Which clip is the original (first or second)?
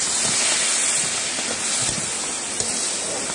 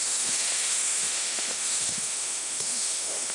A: first